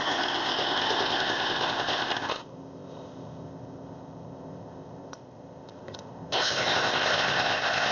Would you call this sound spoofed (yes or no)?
yes